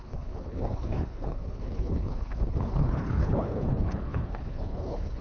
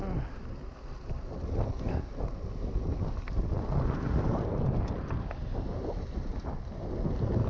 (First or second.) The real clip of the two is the second